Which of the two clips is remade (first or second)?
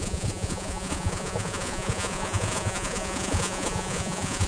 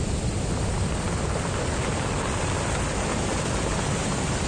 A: first